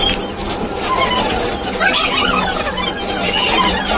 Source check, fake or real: real